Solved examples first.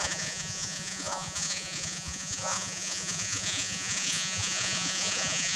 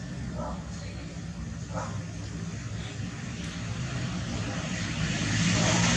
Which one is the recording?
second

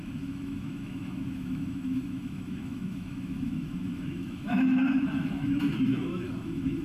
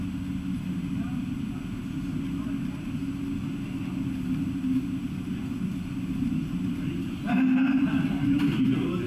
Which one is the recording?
second